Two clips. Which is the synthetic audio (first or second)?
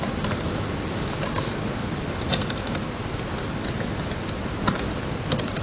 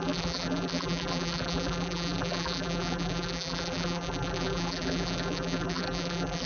second